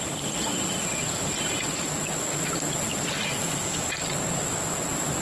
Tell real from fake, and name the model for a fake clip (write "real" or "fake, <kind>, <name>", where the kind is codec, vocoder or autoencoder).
real